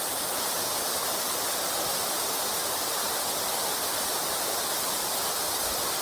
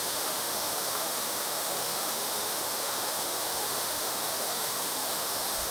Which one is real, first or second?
first